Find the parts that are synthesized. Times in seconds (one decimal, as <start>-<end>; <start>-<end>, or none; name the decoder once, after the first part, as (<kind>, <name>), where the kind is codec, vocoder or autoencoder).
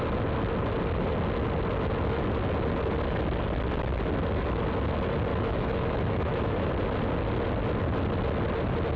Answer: 5.3-6.7 (autoencoder, DAC-VAE)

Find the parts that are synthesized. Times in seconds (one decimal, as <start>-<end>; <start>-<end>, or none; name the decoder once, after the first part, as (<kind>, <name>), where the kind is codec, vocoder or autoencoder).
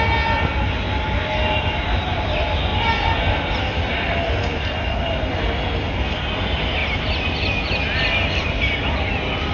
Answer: none